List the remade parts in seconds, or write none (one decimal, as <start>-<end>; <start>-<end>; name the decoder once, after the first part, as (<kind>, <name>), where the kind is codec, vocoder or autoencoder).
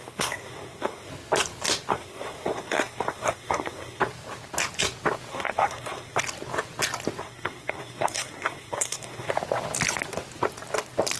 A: 0.0-1.1 (codec, SNAC); 1.9-4.0; 5.3-6.2; 7.2-9.3